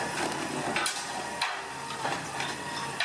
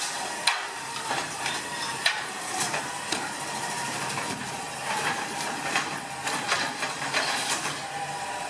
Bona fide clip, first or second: first